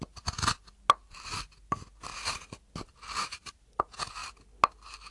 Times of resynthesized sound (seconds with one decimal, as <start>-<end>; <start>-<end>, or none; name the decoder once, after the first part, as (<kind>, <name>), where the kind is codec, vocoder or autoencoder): none